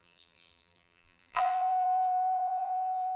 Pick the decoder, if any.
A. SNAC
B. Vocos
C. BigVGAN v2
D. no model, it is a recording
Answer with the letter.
C